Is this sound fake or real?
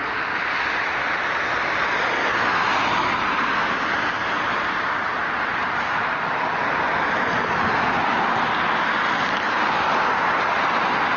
real